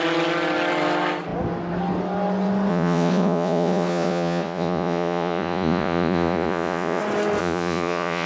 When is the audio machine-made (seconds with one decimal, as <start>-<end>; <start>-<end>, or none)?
2.7-7.0; 7.4-8.3